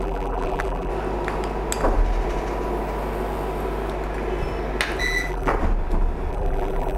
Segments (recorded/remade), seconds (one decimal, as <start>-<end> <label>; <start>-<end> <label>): 0.0-0.9 remade; 0.9-5.0 recorded; 5.0-5.5 remade; 5.5-6.3 recorded; 6.3-7.0 remade